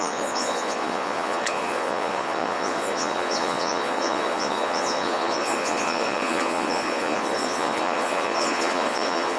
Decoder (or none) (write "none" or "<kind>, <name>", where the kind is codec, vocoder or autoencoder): vocoder, Vocos